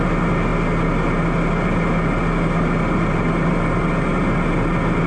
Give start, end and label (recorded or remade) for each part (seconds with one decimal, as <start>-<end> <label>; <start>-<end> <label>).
0.0-5.1 recorded

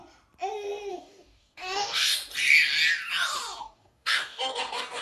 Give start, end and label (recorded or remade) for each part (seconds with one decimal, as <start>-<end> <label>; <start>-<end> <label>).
0.0-0.9 recorded; 0.9-2.2 remade; 2.2-3.6 recorded; 3.6-5.0 remade

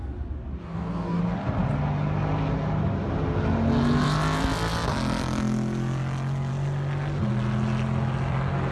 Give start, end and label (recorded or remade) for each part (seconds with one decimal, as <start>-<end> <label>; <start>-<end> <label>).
0.0-0.6 recorded; 0.6-1.2 remade; 1.2-8.7 recorded

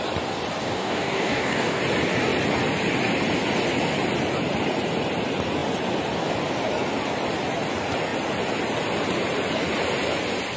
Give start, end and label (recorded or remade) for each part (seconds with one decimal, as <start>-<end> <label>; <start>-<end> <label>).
0.0-0.6 recorded; 0.6-1.8 remade; 1.8-10.6 recorded

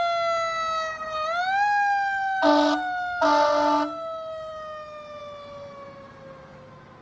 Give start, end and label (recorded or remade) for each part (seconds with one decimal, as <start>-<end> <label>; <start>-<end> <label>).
0.0-7.0 recorded